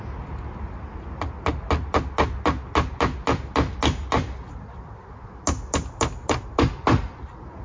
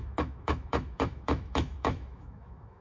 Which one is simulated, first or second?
second